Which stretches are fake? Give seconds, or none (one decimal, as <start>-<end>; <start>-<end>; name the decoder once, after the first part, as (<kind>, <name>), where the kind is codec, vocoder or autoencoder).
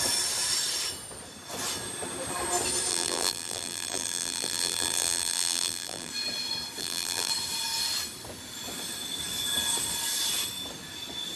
2.9-6.1 (vocoder, BigVGAN v2); 6.8-7.3